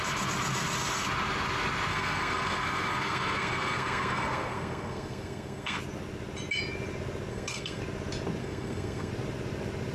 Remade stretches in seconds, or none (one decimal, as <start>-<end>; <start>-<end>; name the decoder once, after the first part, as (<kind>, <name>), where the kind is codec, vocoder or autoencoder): 1.9-5.8 (codec, SNAC); 7.3-7.8; 8.4-9.1